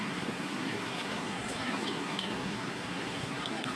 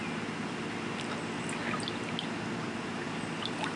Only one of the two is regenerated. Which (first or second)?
first